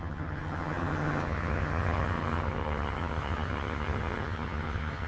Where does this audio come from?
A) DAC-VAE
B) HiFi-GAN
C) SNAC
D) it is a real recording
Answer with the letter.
B